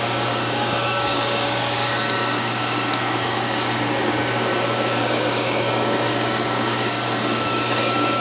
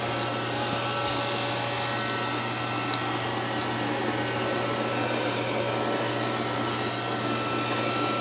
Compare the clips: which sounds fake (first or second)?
first